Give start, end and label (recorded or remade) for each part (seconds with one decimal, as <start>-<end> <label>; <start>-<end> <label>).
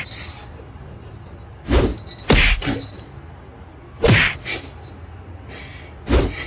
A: 0.0-6.5 recorded